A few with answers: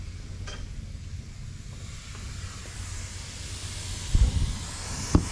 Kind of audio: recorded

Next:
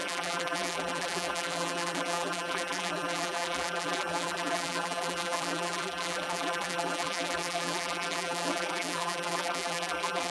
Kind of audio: remade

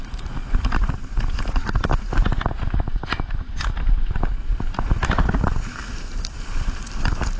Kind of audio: recorded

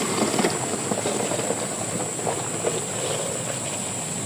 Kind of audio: recorded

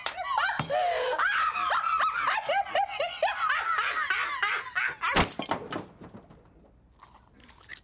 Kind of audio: recorded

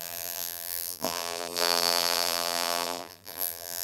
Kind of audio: remade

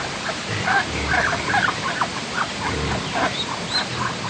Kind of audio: remade